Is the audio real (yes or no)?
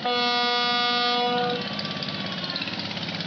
yes